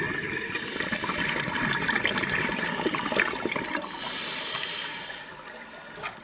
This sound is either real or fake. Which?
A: real